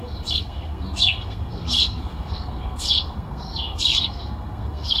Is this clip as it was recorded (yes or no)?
no